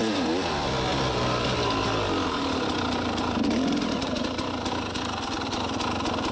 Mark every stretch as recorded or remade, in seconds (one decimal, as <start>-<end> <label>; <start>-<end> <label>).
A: 0.0-6.3 recorded